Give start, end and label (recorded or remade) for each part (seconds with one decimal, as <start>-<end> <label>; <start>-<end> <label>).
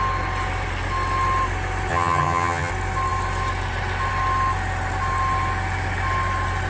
0.0-1.9 recorded; 1.9-2.7 remade; 2.7-6.7 recorded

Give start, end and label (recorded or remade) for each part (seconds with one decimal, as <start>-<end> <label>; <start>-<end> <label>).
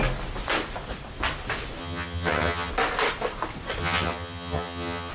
0.0-1.8 recorded; 1.8-2.7 remade; 2.7-3.8 recorded; 3.8-5.1 remade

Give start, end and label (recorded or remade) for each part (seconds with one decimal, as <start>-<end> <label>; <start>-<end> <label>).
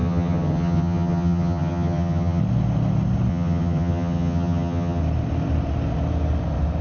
0.0-2.4 remade; 2.4-3.3 recorded; 3.3-5.0 remade; 5.0-6.8 recorded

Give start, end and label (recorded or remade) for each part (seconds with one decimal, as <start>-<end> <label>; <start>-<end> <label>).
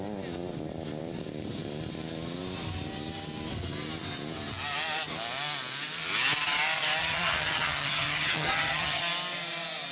0.0-7.0 recorded; 7.0-9.0 remade; 9.0-9.9 recorded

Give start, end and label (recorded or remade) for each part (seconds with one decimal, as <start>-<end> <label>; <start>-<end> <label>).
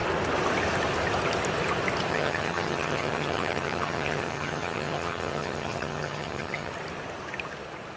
0.0-2.1 recorded; 2.1-6.7 remade; 6.7-8.0 recorded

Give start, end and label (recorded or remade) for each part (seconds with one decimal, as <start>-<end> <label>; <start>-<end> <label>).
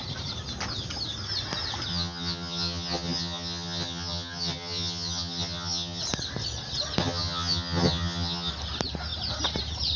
0.0-1.9 recorded; 1.9-6.0 remade; 6.0-7.0 recorded; 7.0-8.5 remade; 8.5-10.0 recorded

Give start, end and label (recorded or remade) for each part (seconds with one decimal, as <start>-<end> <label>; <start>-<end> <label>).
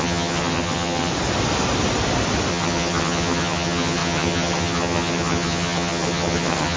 0.0-1.1 remade; 1.1-2.5 recorded; 2.5-6.8 remade